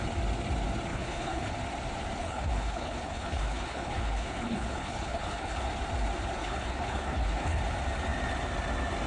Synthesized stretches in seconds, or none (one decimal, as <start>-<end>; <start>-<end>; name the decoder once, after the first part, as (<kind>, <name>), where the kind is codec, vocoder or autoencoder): 0.9-1.5 (codec, HILCodec); 2.2-5.7; 6.4-7.6